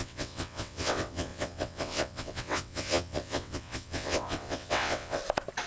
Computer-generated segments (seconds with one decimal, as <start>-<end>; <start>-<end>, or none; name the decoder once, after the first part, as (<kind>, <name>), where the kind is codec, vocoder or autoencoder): 0.0-5.2 (vocoder, WaveNeXt)